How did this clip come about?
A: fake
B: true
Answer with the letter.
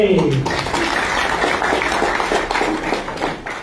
B